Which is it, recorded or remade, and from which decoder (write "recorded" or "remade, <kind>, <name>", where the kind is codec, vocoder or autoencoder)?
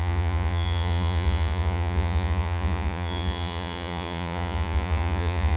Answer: remade, vocoder, Vocos